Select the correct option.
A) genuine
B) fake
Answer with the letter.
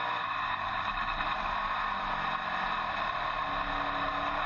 A